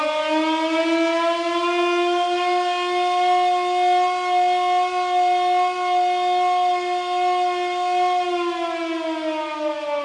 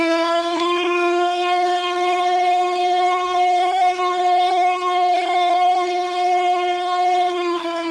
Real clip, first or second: first